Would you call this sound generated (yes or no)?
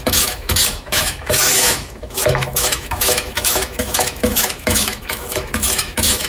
yes